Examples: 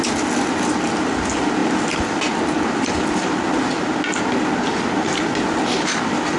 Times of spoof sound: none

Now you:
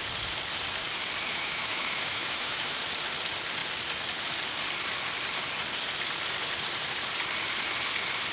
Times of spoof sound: 1.3-2.8 (autoencoder, DAC-VAE)